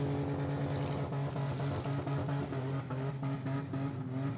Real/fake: real